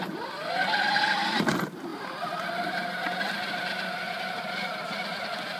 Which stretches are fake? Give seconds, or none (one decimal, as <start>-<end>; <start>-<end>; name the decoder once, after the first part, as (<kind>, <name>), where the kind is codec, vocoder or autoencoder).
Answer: none